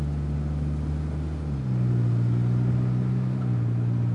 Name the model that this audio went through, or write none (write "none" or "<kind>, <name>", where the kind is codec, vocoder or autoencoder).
none